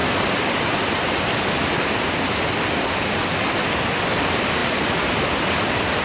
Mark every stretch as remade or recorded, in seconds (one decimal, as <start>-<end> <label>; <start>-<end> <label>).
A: 0.0-6.0 recorded